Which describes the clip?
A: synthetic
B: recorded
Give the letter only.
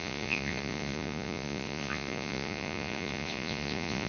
A